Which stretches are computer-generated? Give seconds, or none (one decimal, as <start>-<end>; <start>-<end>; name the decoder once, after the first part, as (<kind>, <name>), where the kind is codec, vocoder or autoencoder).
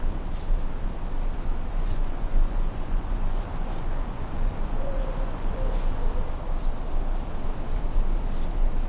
1.7-6.0 (vocoder, Vocos)